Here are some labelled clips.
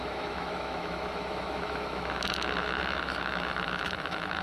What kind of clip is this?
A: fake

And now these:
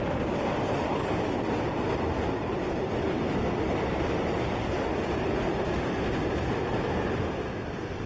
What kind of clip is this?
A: real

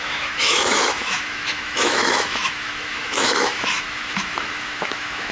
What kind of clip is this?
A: fake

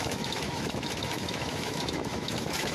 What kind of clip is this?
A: fake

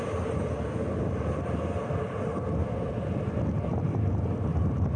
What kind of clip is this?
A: real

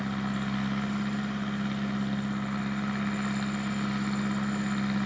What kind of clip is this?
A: real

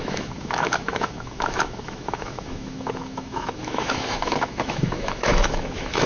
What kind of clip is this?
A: fake